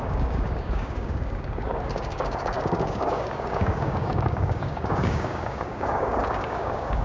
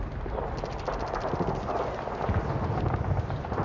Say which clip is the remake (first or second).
first